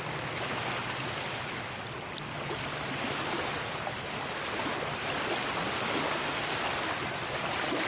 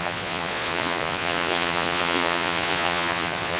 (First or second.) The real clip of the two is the first